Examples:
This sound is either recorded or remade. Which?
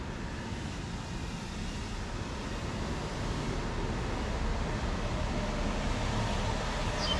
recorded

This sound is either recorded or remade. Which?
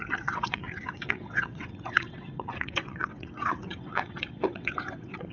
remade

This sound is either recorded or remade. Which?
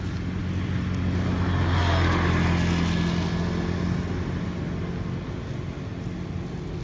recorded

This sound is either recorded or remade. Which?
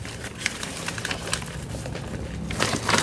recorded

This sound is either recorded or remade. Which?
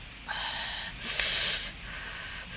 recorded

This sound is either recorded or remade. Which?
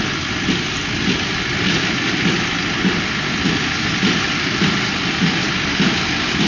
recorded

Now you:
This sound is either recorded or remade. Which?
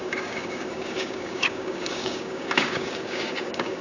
remade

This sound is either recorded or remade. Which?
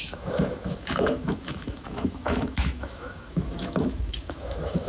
remade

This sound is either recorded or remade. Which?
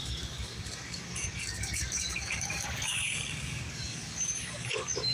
remade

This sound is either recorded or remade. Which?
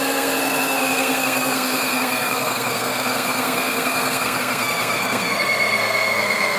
remade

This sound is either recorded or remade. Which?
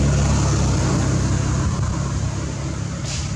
recorded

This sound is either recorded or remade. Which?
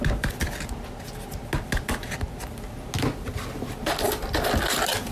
recorded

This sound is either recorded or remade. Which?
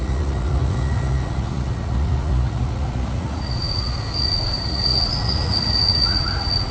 remade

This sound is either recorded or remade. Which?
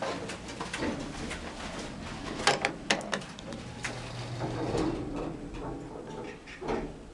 recorded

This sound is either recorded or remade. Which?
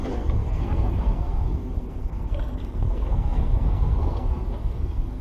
remade